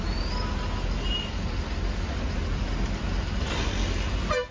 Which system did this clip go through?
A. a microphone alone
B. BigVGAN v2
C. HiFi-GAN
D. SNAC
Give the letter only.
A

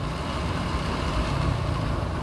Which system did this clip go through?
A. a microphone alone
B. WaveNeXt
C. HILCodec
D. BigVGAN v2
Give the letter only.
A